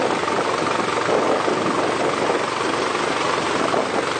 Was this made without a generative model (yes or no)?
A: yes